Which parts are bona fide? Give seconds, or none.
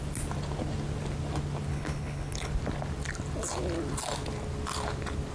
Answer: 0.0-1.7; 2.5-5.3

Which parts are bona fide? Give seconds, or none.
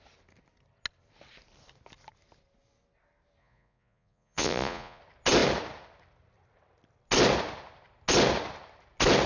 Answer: 0.0-3.4; 5.0-9.3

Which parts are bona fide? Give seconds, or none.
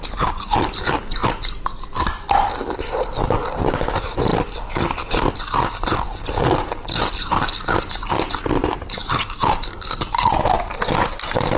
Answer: 0.0-11.6